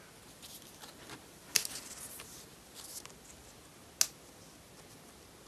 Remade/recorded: recorded